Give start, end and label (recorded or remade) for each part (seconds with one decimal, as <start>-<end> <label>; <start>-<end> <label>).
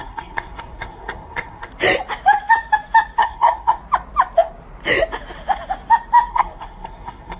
0.0-1.7 remade; 1.7-3.2 recorded; 3.2-3.8 remade; 3.8-6.3 recorded; 6.3-7.4 remade